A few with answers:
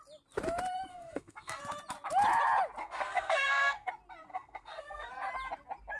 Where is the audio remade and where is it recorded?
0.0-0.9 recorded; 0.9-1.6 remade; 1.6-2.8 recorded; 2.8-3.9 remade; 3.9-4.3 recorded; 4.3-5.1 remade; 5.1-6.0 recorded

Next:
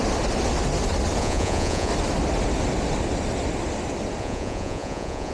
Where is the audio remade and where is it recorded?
0.0-1.2 recorded; 1.2-1.9 remade; 1.9-4.2 recorded; 4.2-5.3 remade